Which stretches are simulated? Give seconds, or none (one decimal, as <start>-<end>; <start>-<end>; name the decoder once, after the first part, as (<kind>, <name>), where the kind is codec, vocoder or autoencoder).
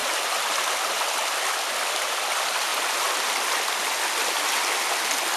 none